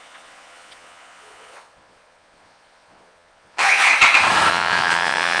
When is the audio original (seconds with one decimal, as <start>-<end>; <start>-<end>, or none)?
3.9-4.5